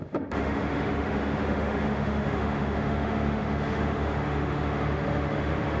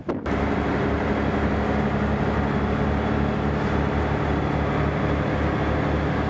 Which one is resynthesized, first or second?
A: first